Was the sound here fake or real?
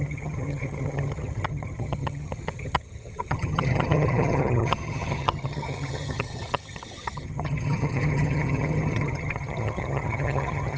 fake